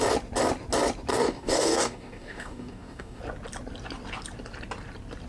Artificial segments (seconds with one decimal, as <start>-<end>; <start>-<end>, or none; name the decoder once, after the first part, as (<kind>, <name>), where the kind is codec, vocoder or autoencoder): 1.1-3.2 (codec, DAC)